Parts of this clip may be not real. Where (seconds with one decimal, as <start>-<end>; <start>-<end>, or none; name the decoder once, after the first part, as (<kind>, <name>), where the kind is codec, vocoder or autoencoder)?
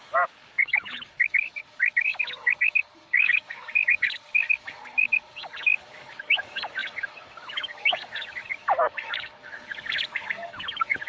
0.0-11.1 (codec, DAC)